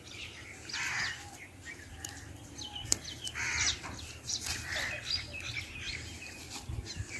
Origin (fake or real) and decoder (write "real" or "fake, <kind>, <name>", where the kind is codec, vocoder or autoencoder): fake, vocoder, BigVGAN v2